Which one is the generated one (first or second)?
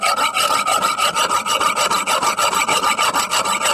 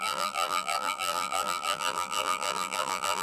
second